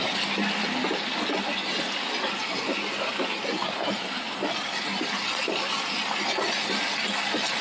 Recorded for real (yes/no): yes